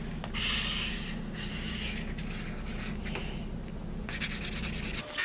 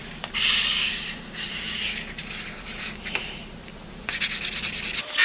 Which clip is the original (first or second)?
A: first